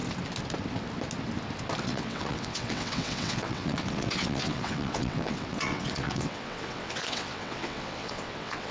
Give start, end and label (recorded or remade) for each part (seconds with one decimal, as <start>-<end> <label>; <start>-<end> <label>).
0.0-1.8 recorded; 1.8-8.7 remade